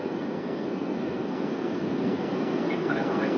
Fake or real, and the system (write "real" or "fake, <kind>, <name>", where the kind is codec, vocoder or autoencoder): fake, codec, SNAC